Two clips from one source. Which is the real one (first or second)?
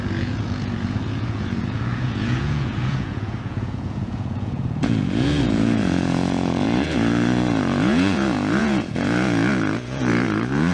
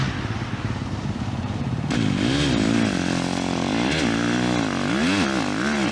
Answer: second